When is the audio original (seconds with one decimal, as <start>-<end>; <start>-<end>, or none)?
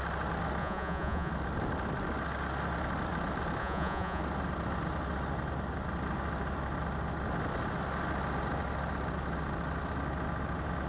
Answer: 0.0-0.6; 1.3-3.6; 4.2-10.9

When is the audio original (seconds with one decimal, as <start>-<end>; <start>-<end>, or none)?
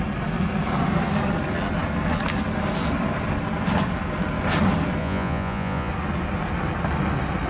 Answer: 0.0-5.0; 5.9-7.5